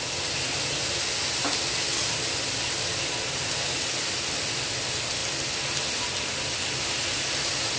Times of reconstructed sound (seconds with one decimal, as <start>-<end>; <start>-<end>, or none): none